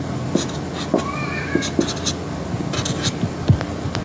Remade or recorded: recorded